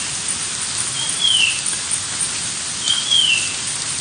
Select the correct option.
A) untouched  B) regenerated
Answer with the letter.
A